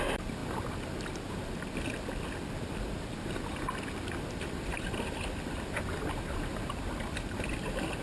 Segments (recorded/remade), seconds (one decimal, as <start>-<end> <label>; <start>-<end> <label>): 0.0-0.4 remade; 0.4-4.4 recorded; 4.4-8.0 remade